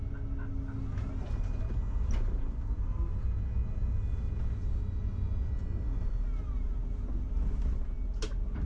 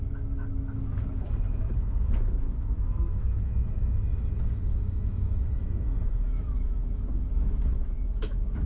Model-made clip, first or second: second